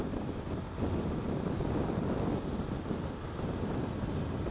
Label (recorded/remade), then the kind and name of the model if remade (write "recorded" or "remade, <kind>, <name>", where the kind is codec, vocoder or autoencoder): recorded